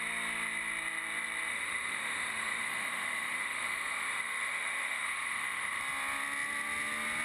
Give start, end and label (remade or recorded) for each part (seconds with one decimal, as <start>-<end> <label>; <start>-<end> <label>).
0.0-1.5 recorded; 1.5-5.8 remade; 5.8-7.2 recorded